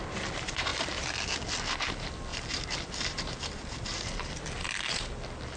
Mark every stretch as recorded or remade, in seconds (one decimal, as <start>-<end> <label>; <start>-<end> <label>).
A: 0.0-2.3 recorded; 2.3-4.4 remade; 4.4-5.6 recorded